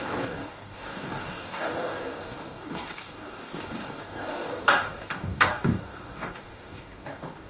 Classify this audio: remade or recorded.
remade